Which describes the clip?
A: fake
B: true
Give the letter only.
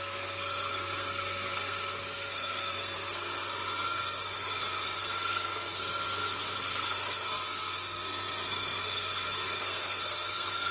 A